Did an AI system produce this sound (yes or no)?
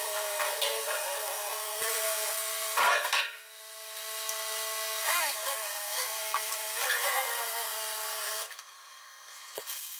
yes